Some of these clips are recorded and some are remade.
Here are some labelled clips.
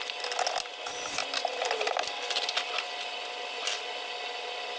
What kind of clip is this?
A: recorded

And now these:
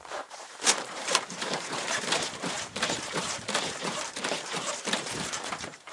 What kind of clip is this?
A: remade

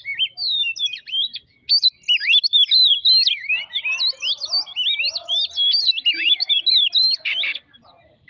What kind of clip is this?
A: recorded